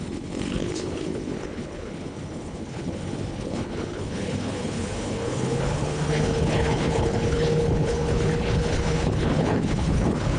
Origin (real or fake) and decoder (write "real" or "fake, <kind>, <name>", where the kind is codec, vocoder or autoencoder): fake, codec, HILCodec